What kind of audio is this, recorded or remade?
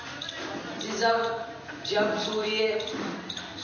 recorded